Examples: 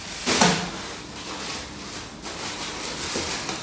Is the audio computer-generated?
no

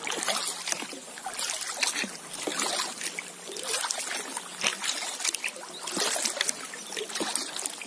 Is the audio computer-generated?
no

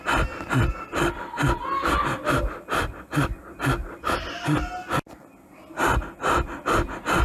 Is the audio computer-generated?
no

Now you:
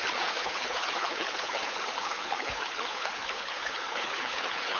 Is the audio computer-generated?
yes